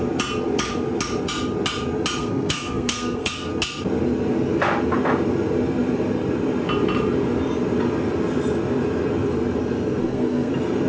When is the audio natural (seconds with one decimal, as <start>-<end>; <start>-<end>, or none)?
0.0-2.2; 3.5-10.0; 10.5-10.9